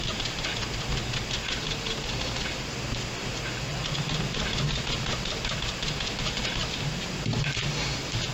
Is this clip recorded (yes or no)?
yes